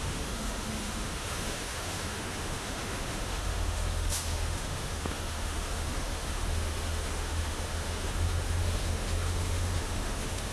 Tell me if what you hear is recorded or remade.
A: remade